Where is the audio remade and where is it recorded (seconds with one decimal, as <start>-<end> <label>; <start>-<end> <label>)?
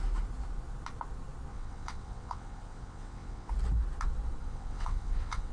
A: 0.0-1.5 recorded; 1.5-3.5 remade; 3.5-4.4 recorded; 4.4-5.5 remade